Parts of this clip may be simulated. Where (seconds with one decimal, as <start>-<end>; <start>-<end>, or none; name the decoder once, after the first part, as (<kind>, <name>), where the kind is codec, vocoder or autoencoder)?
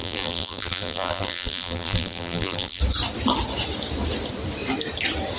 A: 0.0-2.8 (vocoder, BigVGAN v2)